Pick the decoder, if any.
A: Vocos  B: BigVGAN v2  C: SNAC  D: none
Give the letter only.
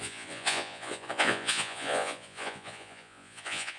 A